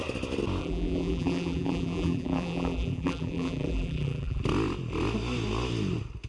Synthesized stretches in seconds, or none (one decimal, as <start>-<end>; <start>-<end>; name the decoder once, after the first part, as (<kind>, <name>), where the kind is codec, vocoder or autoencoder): 0.6-4.4 (vocoder, BigVGAN v2)